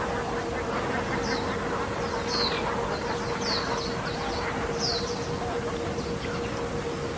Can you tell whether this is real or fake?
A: real